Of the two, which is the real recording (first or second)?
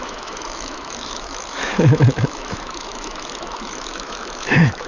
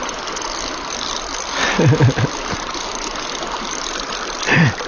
second